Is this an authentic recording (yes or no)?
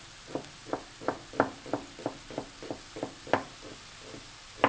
yes